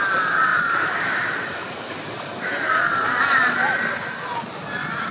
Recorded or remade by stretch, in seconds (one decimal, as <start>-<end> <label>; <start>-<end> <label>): 0.0-0.5 recorded; 0.5-3.5 remade; 3.5-5.1 recorded